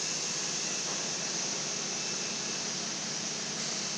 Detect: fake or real real